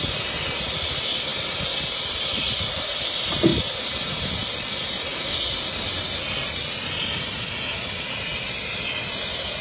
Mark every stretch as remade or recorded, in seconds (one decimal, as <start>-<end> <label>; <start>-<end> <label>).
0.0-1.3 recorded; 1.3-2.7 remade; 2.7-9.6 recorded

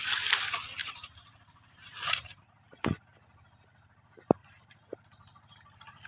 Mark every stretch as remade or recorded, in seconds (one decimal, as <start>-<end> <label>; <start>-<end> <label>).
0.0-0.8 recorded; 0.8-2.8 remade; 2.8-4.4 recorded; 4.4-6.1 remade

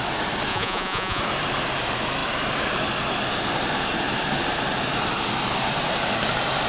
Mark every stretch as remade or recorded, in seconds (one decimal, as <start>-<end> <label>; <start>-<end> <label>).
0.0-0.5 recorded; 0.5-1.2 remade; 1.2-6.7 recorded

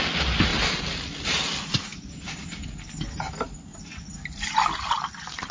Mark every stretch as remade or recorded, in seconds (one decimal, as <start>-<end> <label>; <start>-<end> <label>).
0.0-5.5 recorded